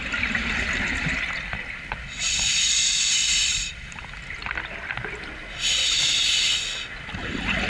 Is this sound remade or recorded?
recorded